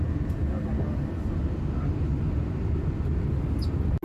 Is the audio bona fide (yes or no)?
yes